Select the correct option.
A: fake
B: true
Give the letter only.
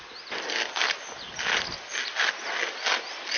B